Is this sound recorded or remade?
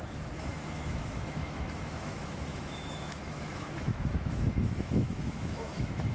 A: remade